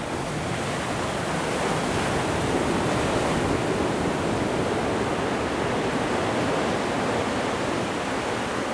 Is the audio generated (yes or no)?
no